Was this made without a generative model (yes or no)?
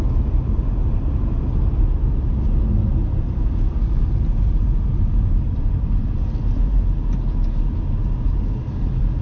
yes